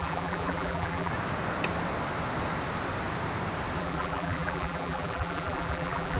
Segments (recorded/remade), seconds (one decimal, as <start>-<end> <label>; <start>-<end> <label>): 0.0-1.1 remade; 1.1-3.8 recorded; 3.8-6.2 remade